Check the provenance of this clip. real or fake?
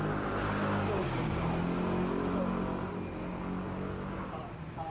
real